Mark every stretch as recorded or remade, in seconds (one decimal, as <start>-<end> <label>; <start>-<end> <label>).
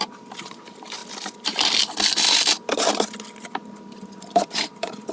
0.0-1.0 remade; 1.0-3.4 recorded; 3.4-5.1 remade